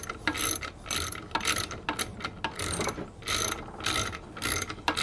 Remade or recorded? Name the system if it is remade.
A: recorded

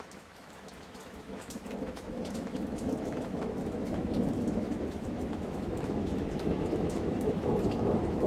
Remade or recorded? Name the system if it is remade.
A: remade, autoencoder, DAC-VAE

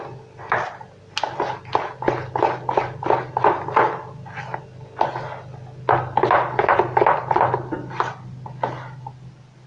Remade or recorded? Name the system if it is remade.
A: recorded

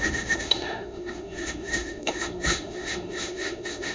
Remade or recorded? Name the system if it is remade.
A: remade, autoencoder, DAC-VAE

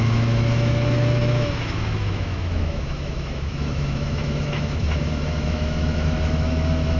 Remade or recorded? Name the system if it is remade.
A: remade, autoencoder, DAC-VAE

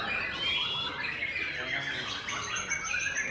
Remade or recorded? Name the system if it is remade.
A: recorded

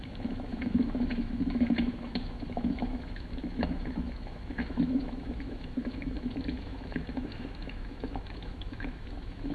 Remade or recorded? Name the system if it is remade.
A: remade, autoencoder, DAC-VAE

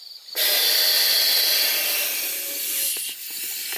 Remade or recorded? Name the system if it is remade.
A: recorded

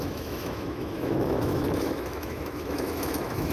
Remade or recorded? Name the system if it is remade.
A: remade, autoencoder, DAC-VAE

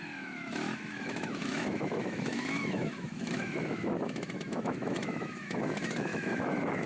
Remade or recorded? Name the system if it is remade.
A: remade, autoencoder, DAC-VAE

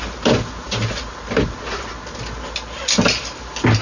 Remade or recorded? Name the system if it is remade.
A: recorded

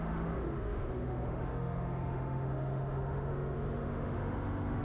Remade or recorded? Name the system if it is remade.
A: remade, autoencoder, DAC-VAE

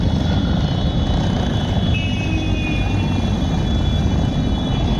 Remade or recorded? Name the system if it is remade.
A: recorded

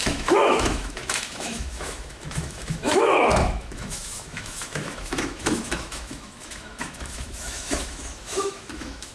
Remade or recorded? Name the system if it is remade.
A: remade, autoencoder, DAC-VAE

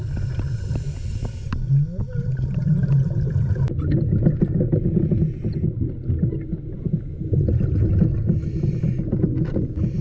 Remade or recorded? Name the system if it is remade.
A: recorded